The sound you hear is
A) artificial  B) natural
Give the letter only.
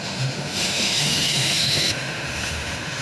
A